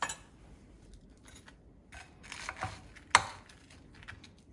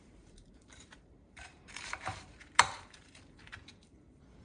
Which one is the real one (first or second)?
first